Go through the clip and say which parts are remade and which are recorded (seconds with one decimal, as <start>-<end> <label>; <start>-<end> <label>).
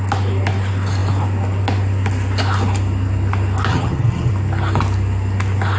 0.0-3.7 recorded; 3.7-4.3 remade; 4.3-5.8 recorded